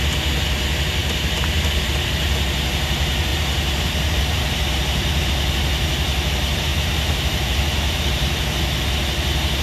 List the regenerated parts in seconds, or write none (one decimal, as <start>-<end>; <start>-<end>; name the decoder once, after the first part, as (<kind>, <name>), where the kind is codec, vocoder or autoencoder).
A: 1.0-2.2 (vocoder, BigVGAN v2); 3.3-5.3; 6.7-8.4